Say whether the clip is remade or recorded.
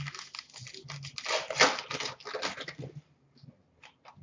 recorded